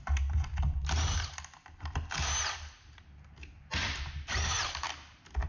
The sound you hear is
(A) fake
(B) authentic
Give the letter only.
B